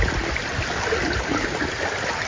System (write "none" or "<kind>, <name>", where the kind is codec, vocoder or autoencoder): none